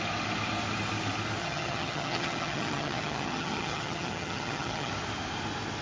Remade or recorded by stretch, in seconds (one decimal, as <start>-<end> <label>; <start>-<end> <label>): 0.0-1.4 recorded; 1.4-4.9 remade; 4.9-5.8 recorded